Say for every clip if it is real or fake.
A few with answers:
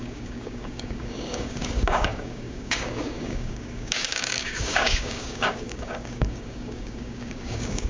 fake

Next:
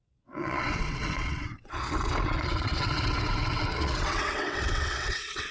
fake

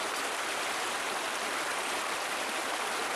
real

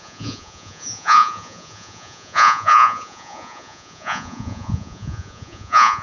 fake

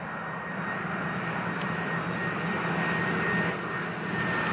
real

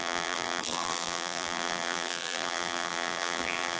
fake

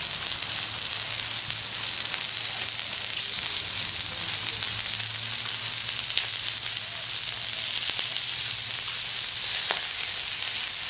real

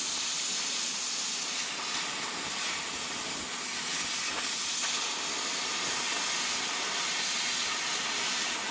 real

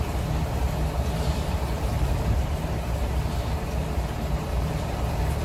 fake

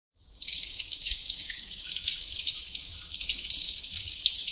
fake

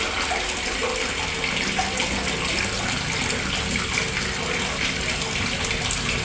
real